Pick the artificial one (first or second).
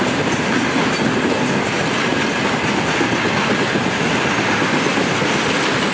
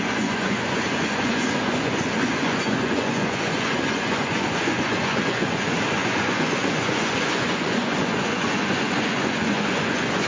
second